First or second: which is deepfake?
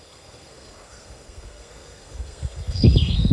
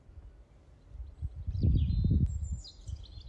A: first